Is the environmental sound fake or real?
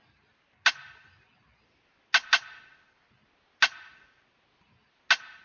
real